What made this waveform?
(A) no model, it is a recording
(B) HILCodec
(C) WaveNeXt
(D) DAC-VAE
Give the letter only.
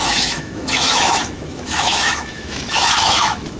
D